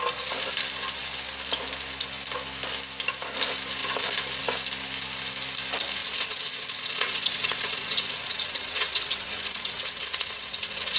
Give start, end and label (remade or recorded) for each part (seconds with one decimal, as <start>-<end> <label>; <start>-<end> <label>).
0.0-6.0 recorded; 6.0-11.0 remade